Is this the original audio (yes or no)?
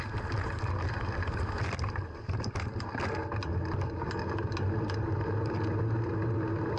yes